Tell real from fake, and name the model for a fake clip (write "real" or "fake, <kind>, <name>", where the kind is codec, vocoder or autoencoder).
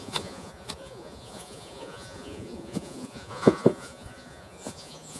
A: fake, vocoder, Vocos